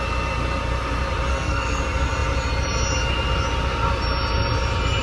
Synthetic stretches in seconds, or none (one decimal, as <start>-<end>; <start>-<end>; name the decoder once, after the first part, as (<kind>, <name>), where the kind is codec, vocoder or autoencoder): 1.3-1.8 (codec, SNAC)

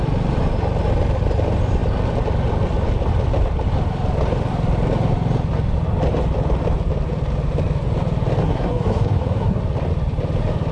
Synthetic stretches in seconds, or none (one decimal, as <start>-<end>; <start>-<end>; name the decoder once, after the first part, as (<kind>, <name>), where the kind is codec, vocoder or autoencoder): 8.4-9.6 (codec, SNAC)

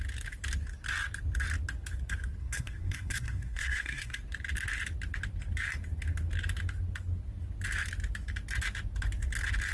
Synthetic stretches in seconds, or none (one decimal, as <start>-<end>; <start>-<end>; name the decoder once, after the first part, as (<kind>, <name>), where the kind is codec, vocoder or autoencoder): 2.4-4.2 (codec, SNAC)